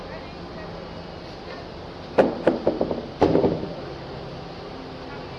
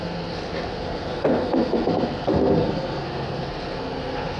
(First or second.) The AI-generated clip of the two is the second